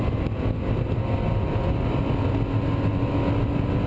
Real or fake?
real